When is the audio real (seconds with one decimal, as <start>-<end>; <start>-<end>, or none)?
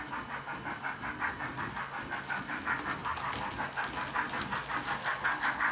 0.0-5.7